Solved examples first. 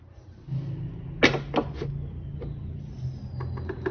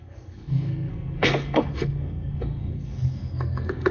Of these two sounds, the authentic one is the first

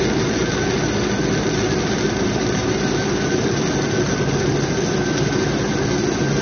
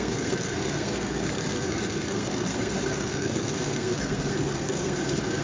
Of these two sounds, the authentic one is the first